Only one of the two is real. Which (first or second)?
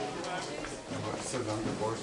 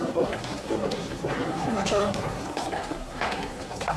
first